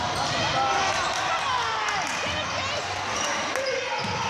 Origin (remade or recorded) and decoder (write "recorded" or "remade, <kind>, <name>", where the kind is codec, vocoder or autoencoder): recorded